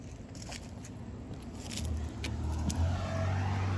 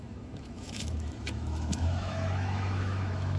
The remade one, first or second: second